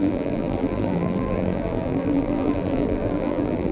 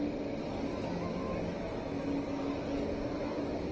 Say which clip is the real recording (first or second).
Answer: second